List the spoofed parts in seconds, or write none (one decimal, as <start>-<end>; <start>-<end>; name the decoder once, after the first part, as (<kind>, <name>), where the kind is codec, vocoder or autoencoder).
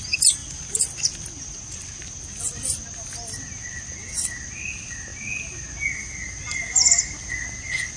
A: none